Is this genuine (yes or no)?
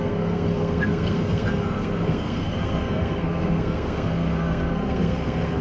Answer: no